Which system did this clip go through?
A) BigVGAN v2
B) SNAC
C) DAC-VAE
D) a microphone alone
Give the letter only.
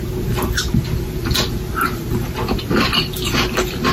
D